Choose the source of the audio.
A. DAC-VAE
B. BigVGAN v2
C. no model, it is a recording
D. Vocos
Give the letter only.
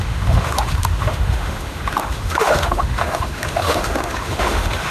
A